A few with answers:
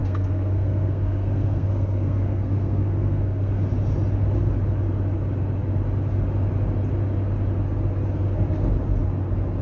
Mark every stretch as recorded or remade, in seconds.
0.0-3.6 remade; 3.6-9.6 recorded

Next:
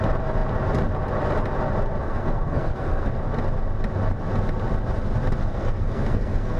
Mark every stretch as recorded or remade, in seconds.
0.0-2.0 recorded; 2.0-3.2 remade; 3.2-5.4 recorded; 5.4-6.6 remade

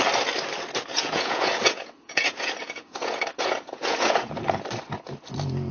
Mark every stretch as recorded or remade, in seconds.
0.0-0.9 recorded; 0.9-4.3 remade; 4.3-5.7 recorded

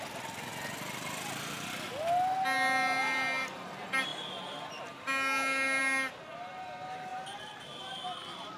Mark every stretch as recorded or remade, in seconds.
0.0-8.6 recorded

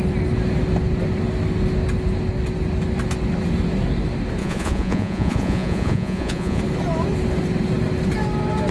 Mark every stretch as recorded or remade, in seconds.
0.0-4.4 recorded; 4.4-6.6 remade; 6.6-8.7 recorded

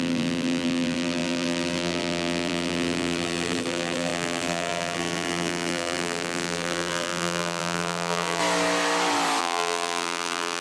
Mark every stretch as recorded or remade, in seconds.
0.0-8.4 remade; 8.4-9.4 recorded; 9.4-10.6 remade

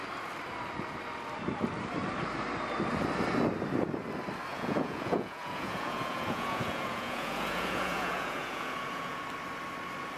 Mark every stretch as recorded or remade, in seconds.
0.0-4.5 recorded; 4.5-9.2 remade; 9.2-10.2 recorded